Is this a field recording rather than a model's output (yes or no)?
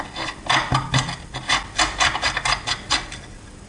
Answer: yes